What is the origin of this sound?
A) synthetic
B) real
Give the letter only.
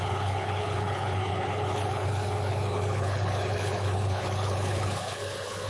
A